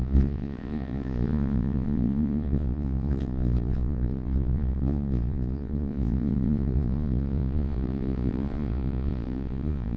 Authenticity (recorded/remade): remade